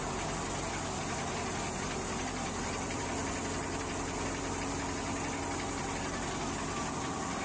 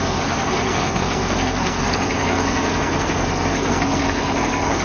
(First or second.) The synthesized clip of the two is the second